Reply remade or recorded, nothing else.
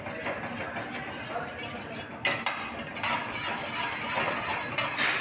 recorded